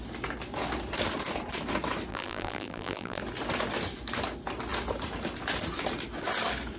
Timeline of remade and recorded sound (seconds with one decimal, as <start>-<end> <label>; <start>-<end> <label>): 0.0-2.1 recorded; 2.1-3.2 remade; 3.2-6.8 recorded